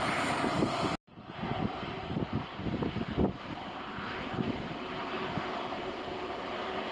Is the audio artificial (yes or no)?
no